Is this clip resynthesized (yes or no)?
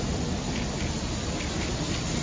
no